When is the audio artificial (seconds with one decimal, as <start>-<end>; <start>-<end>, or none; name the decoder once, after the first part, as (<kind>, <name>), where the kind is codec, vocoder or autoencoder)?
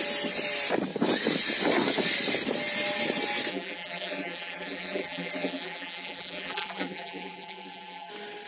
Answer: 3.5-8.1 (vocoder, BigVGAN v2)